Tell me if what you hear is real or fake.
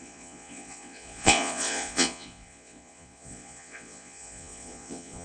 fake